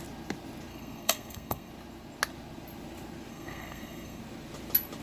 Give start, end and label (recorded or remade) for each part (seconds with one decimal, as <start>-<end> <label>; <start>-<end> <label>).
0.0-0.7 recorded; 0.7-1.7 remade; 1.7-3.3 recorded; 3.3-4.2 remade; 4.2-5.0 recorded